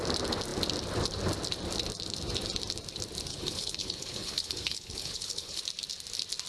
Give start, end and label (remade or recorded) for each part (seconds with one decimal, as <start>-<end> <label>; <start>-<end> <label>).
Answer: 0.0-3.3 recorded; 3.3-5.6 remade; 5.6-6.5 recorded